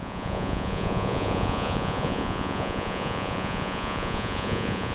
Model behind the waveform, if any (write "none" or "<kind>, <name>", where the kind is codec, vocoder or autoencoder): vocoder, Vocos